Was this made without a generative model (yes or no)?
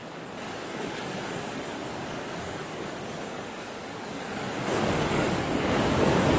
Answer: no